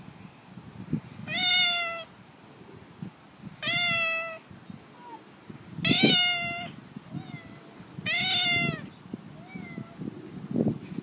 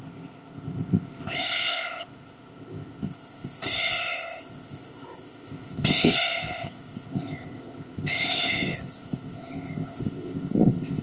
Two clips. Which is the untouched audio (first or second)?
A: first